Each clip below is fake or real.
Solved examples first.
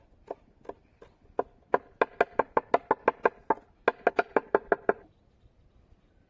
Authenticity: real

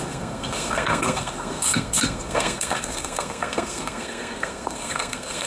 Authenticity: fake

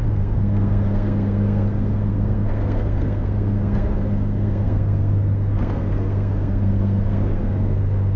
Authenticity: fake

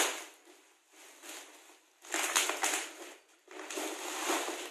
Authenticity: real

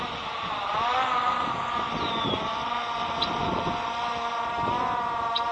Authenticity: real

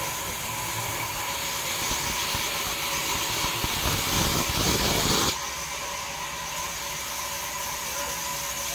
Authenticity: real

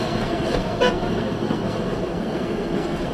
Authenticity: fake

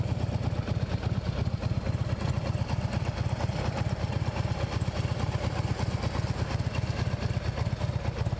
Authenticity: real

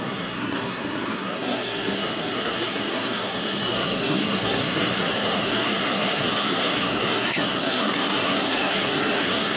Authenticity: fake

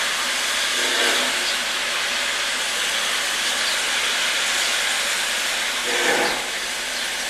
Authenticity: real